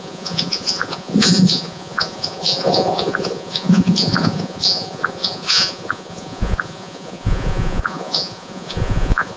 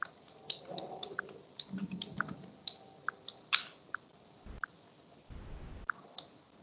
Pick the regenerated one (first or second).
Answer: first